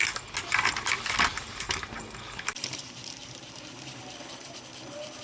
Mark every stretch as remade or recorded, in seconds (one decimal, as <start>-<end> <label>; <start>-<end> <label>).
0.0-1.3 recorded; 1.3-4.0 remade; 4.0-5.2 recorded